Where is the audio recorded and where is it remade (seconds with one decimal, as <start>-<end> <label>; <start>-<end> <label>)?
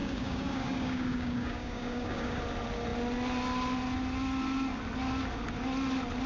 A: 0.0-2.4 remade; 2.4-6.3 recorded